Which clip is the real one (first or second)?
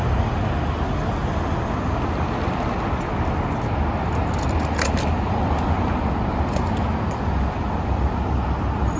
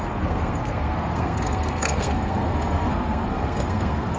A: first